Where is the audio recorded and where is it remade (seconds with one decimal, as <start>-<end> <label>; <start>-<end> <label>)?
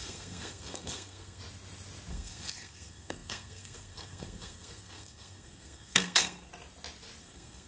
0.0-1.4 remade; 1.4-2.1 recorded; 2.1-6.5 remade; 6.5-7.2 recorded; 7.2-7.7 remade